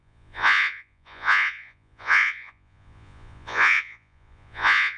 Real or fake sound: fake